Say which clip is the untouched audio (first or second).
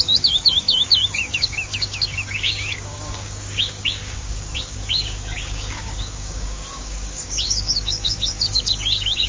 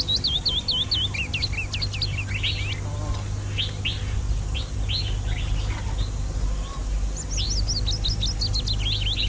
second